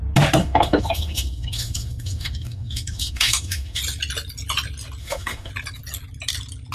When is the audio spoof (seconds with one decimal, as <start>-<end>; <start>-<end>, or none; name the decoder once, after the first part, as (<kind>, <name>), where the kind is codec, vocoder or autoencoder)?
0.4-3.8 (autoencoder, DAC-VAE); 5.0-5.5